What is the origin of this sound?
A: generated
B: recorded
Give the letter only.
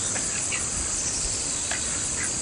B